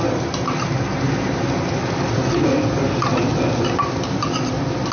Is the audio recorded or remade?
recorded